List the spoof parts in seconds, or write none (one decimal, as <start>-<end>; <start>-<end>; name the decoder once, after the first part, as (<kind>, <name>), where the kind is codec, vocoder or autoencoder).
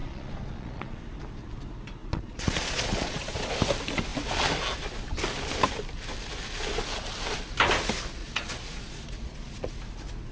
0.0-1.0 (vocoder, Vocos); 2.0-3.5; 8.2-9.7